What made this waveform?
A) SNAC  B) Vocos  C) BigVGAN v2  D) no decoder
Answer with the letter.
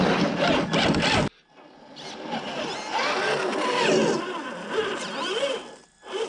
D